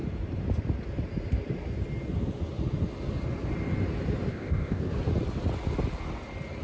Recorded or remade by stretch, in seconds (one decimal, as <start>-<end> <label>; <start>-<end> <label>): 0.0-4.3 recorded; 4.3-4.9 remade; 4.9-6.6 recorded